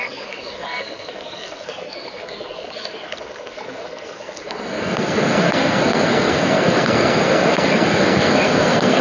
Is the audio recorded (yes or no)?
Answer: no